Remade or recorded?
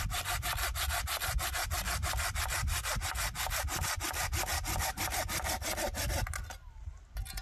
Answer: recorded